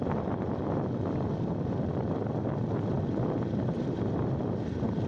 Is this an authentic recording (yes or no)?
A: yes